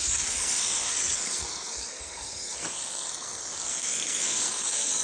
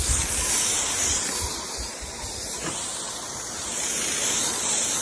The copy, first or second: first